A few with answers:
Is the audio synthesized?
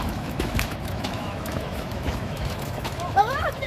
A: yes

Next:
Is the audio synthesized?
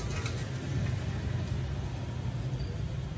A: no